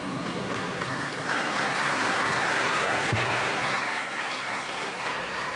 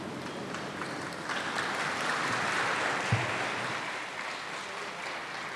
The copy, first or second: first